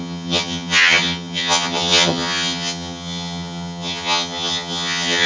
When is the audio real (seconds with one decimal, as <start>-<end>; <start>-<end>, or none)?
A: none